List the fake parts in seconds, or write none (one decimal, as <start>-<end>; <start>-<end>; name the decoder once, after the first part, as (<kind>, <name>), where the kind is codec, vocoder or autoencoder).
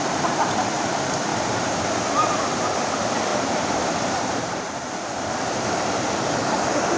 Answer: 1.3-2.4 (vocoder, BigVGAN v2); 3.3-4.7